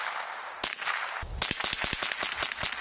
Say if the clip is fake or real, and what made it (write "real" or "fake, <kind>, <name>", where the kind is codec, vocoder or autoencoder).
real